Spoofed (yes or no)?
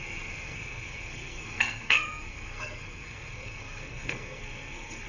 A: yes